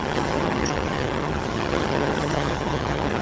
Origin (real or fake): fake